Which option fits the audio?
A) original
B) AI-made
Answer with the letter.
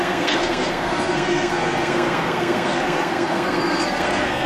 B